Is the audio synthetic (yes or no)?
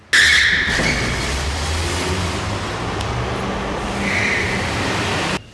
no